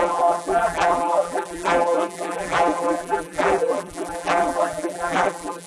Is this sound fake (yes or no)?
yes